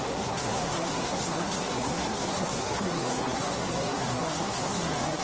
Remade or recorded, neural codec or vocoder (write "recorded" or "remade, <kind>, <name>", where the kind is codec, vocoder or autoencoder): remade, codec, SNAC